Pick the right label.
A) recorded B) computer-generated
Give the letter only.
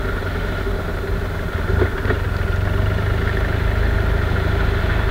A